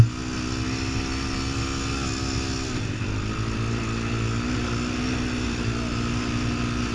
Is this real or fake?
real